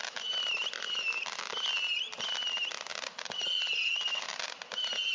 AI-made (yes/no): no